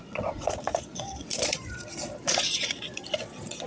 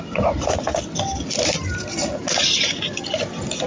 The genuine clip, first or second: second